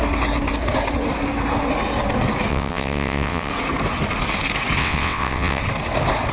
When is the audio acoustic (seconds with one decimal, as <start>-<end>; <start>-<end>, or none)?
0.0-2.5; 3.5-4.8; 5.6-6.3